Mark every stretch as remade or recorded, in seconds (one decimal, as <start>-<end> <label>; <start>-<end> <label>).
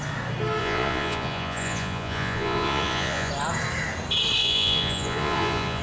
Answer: 0.0-0.6 recorded; 0.6-3.3 remade; 3.3-4.4 recorded; 4.4-5.8 remade